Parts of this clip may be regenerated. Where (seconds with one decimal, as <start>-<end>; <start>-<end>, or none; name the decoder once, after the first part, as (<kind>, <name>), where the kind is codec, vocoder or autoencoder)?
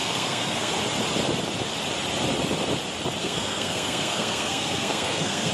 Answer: 0.0-0.7 (codec, SNAC); 3.2-5.5